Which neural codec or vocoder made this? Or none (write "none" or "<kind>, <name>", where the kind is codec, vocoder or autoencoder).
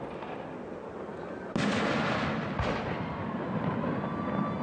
none